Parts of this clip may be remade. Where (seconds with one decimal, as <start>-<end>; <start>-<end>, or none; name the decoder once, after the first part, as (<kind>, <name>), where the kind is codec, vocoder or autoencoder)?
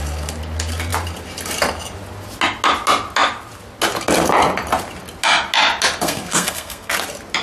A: 6.0-6.9 (codec, SNAC)